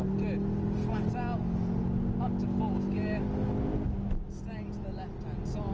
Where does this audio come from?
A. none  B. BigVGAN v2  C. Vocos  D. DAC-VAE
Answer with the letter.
A